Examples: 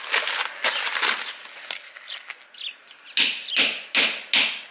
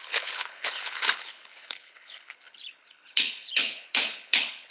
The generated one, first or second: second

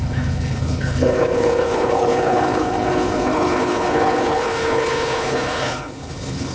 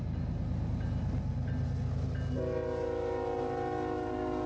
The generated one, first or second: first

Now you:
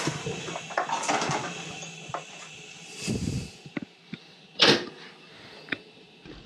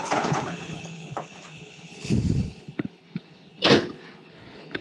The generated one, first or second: second